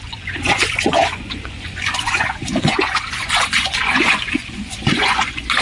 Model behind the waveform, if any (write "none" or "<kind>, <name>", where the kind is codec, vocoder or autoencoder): vocoder, Vocos